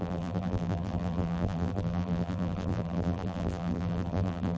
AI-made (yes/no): yes